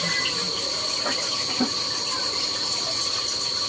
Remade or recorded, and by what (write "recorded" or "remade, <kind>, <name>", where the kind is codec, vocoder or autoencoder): remade, vocoder, BigVGAN v2